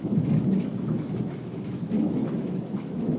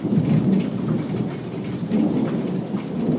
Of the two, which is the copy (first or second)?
first